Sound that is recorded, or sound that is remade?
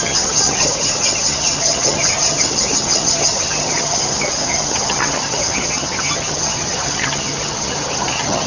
remade